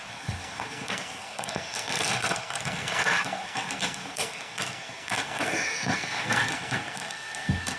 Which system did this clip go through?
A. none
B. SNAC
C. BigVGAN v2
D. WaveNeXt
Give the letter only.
B